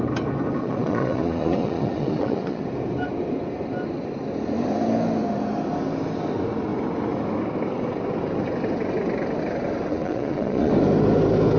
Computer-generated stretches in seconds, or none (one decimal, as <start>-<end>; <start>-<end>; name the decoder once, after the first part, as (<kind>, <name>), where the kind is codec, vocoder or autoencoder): 0.6-2.6 (vocoder, Vocos); 9.9-10.7